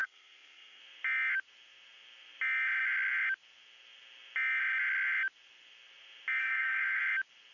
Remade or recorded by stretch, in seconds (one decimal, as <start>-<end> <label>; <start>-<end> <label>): 0.0-0.8 remade; 0.8-6.4 recorded; 6.4-7.0 remade; 7.0-7.5 recorded